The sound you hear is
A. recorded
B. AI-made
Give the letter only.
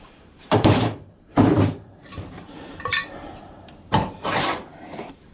B